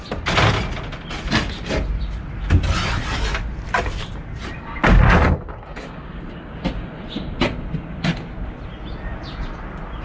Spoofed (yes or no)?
no